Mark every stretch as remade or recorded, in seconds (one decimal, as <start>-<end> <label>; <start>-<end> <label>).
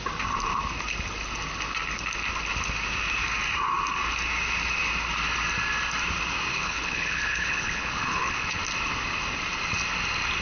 0.0-6.5 recorded; 6.5-8.6 remade; 8.6-10.4 recorded